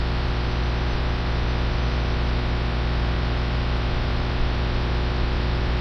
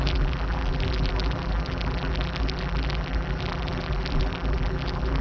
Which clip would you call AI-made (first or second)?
second